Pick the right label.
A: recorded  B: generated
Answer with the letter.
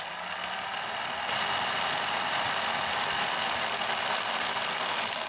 A